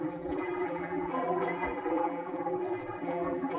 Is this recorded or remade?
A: remade